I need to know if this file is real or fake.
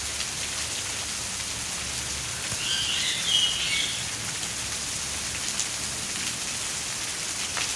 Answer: real